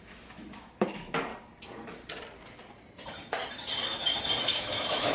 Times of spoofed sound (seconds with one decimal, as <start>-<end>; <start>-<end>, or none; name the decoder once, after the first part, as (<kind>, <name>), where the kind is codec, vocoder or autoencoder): 0.0-1.3 (autoencoder, DAC-VAE); 4.4-5.1